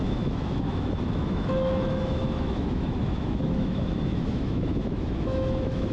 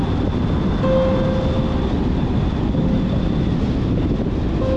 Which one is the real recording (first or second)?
second